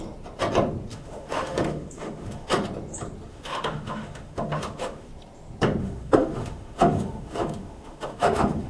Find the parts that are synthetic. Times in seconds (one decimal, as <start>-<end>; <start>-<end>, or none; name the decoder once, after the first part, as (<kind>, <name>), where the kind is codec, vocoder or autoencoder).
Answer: 0.9-2.6 (autoencoder, DAC-VAE); 3.3-5.1; 5.8-8.7